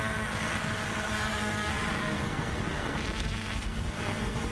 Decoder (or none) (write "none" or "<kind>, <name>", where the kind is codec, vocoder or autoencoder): codec, SNAC